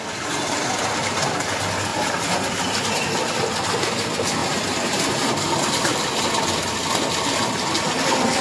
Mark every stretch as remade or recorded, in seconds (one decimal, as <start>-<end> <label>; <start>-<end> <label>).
0.0-1.9 recorded; 1.9-3.2 remade; 3.2-4.4 recorded; 4.4-5.5 remade; 5.5-8.4 recorded